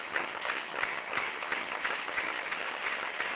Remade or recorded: remade